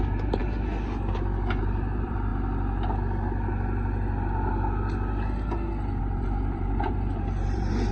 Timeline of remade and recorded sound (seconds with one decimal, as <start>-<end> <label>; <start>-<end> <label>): 0.0-0.4 remade; 0.4-1.6 recorded; 1.6-2.3 remade; 2.3-6.0 recorded; 6.0-7.9 remade